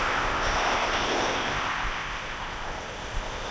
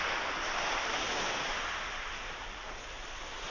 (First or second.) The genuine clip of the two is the second